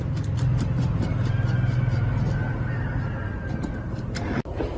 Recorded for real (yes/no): yes